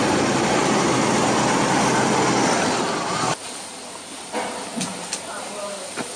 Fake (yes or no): no